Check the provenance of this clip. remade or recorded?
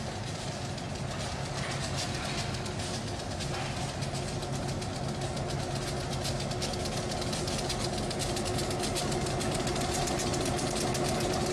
recorded